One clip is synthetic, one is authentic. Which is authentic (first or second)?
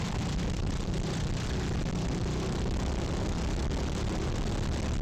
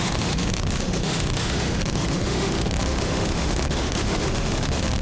first